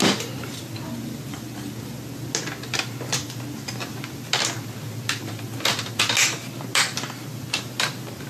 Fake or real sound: real